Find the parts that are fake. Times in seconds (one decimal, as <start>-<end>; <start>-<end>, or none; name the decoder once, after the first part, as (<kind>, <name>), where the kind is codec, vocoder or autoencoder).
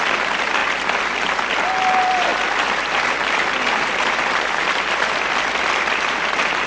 2.3-6.3 (vocoder, BigVGAN v2)